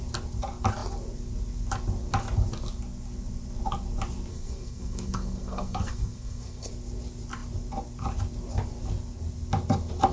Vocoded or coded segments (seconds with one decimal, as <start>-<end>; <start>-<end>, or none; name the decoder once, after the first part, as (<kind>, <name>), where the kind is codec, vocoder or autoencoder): 4.3-6.7 (codec, SNAC)